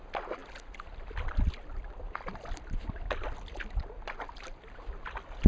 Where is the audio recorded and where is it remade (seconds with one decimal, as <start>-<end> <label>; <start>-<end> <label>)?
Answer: 0.0-5.5 recorded